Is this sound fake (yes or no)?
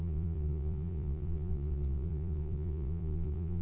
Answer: yes